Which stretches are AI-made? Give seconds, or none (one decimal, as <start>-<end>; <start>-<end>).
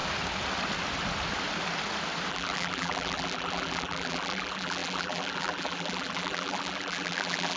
2.3-7.6